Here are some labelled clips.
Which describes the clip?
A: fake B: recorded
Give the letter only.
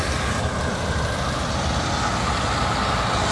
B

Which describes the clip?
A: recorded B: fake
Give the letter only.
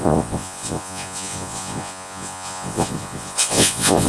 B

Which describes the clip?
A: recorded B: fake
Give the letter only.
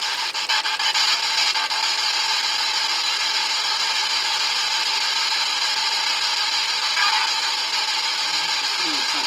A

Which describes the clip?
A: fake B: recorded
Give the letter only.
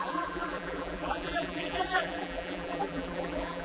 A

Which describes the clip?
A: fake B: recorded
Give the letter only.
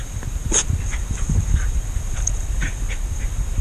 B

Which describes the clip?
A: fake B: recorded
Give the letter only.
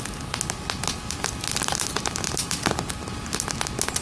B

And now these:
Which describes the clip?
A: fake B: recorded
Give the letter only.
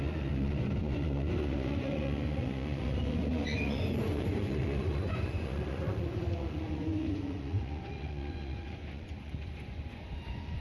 A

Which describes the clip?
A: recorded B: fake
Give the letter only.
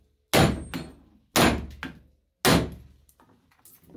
A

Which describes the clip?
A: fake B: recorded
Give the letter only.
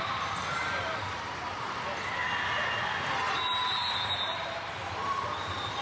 B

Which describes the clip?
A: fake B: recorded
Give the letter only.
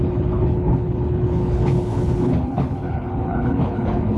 A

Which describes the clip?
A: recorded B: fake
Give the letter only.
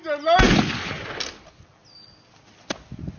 A